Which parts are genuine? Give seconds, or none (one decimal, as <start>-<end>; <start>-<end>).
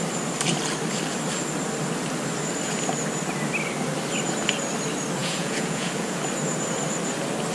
0.0-5.2; 6.2-7.5